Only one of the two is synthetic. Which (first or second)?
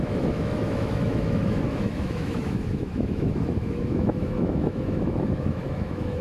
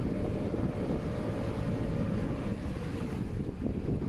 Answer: first